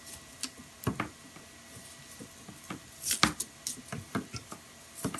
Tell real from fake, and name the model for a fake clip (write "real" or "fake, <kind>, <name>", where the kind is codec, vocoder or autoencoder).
real